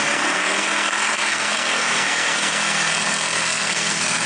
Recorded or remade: remade